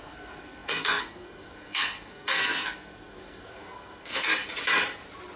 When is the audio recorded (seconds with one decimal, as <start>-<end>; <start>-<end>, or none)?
4.3-5.4